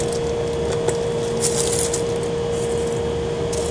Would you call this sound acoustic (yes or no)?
yes